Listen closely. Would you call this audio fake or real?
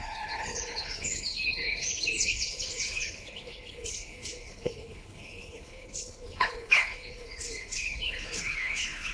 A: fake